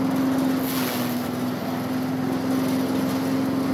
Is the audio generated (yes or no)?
no